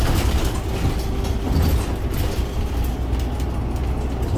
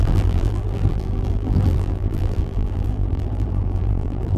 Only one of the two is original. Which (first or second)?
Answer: first